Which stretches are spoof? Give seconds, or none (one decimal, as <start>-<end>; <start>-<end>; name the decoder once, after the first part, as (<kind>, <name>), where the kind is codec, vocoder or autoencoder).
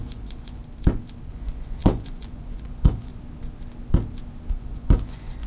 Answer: 0.0-0.6 (vocoder, Vocos); 1.3-3.1; 4.5-5.5